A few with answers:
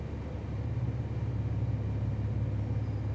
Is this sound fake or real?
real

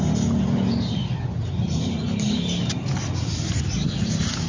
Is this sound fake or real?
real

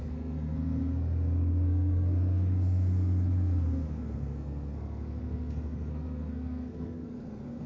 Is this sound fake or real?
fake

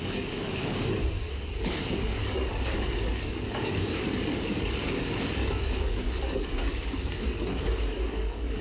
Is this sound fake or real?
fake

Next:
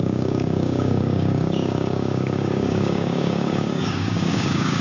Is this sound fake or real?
fake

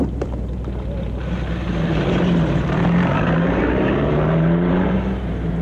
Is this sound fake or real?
fake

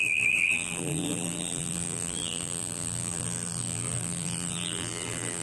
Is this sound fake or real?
fake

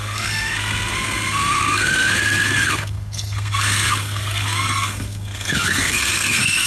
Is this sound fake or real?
fake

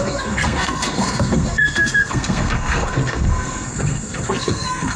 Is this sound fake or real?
fake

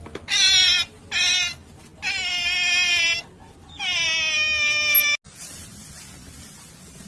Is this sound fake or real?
real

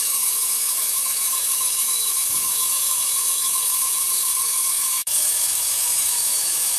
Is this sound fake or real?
fake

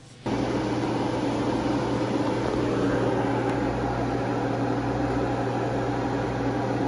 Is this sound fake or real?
real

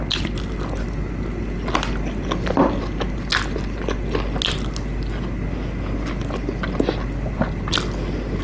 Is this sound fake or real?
real